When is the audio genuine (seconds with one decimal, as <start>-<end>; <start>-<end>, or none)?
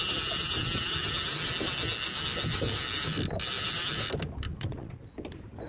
0.0-4.5; 5.0-5.7